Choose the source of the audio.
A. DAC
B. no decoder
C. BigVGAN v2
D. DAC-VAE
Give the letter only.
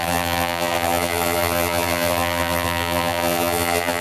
C